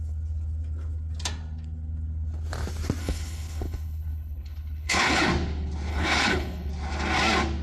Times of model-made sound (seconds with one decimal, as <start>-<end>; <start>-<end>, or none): 3.0-5.2; 5.9-6.7

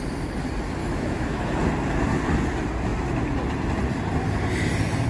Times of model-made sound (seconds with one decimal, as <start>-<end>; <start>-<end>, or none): 0.8-1.6

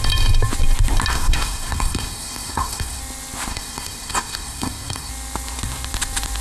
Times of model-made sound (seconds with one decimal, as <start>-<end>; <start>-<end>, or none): 1.1-3.0; 3.5-5.1

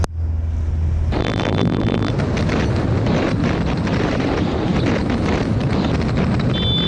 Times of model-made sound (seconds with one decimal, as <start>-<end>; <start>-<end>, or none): 1.2-2.1

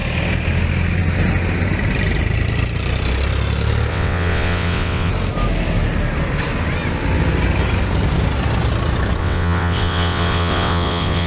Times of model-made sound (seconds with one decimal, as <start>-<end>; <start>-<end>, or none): 3.9-5.1; 9.2-11.3

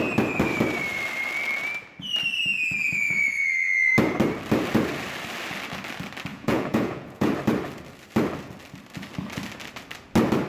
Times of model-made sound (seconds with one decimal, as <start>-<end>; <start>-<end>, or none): 6.3-7.3

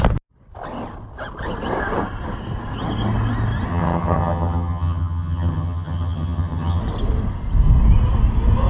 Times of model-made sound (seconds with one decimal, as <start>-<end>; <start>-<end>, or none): 3.7-6.8